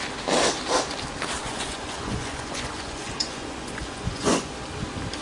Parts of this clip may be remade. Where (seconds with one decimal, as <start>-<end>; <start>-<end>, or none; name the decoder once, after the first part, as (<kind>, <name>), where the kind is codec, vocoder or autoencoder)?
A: 1.4-4.5 (vocoder, Vocos)